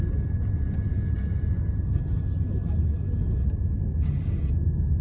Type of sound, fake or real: real